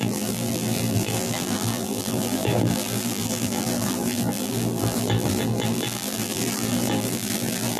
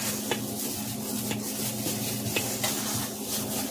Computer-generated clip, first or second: first